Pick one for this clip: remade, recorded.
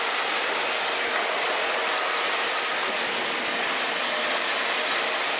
recorded